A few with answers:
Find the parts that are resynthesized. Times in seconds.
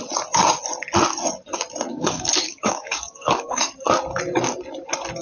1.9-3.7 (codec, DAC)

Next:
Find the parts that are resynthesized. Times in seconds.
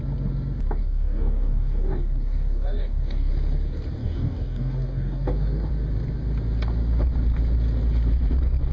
0.8-3.3 (codec, DAC); 4.0-5.7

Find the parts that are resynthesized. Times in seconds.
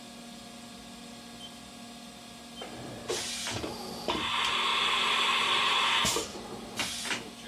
none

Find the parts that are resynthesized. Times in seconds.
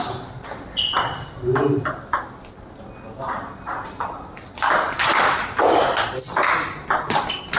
none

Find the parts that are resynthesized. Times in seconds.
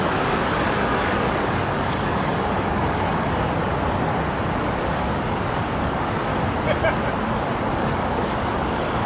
0.0-3.7 (codec, DAC); 4.6-6.3; 7.6-9.1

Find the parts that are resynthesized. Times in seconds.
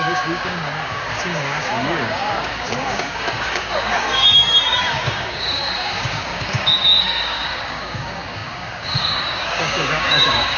0.0-10.6 (codec, DAC)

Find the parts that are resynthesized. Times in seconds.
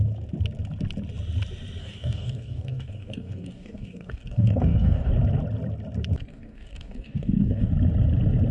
1.8-5.1 (codec, DAC); 6.3-7.7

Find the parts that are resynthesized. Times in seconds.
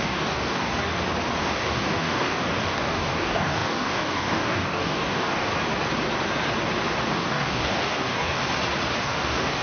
0.0-0.7 (codec, DAC); 1.4-5.5; 7.1-8.4; 9.0-9.6